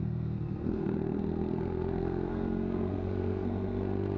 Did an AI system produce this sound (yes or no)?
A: yes